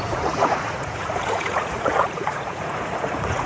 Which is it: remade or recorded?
remade